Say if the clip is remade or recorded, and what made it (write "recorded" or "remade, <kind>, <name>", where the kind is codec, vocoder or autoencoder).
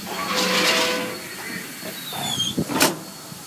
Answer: recorded